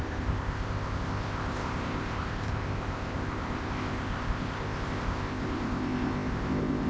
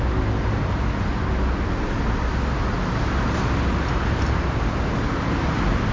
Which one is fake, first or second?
first